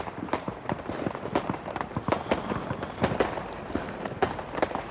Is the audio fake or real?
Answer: fake